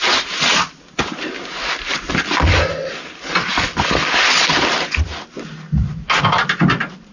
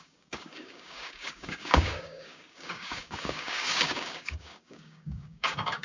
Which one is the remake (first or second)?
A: second